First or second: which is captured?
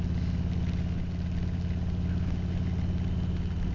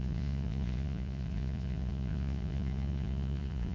first